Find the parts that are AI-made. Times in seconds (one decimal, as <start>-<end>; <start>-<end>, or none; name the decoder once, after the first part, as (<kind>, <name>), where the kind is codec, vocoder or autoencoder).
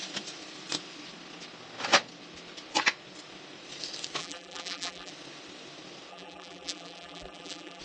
4.2-5.1 (vocoder, BigVGAN v2); 6.1-7.8